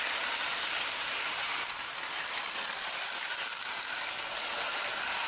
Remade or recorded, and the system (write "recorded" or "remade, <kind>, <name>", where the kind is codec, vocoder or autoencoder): recorded